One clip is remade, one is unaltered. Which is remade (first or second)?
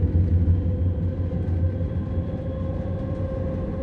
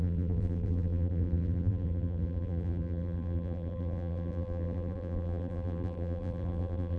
second